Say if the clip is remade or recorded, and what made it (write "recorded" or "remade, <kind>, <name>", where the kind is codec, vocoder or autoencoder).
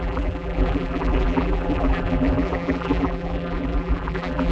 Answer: remade, vocoder, BigVGAN v2